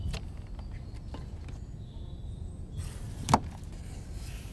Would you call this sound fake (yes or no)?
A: no